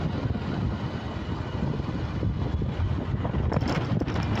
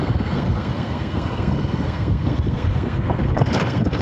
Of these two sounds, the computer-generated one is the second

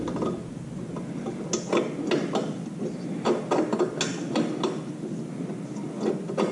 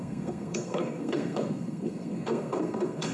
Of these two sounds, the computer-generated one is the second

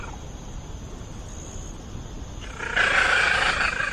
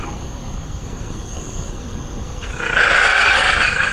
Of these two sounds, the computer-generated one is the second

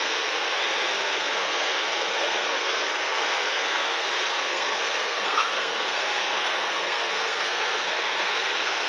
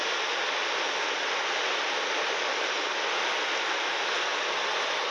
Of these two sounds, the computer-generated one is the first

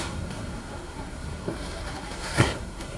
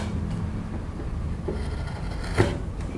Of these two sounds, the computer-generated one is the first